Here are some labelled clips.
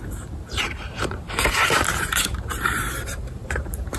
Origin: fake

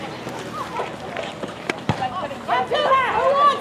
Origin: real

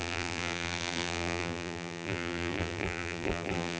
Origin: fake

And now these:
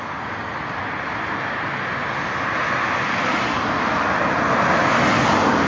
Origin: real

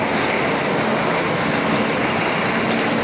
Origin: real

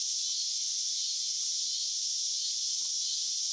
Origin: real